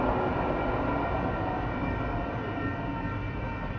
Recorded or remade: recorded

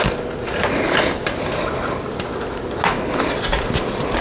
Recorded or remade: recorded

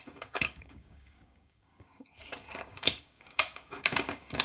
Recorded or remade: remade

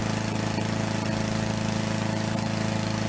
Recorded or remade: recorded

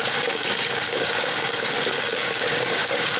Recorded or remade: remade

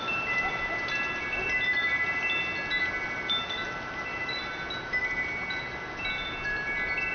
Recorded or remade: recorded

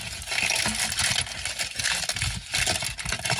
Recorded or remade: recorded